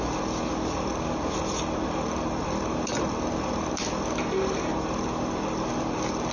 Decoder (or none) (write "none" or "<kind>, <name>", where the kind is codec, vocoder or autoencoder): none